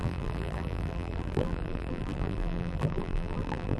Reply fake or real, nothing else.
fake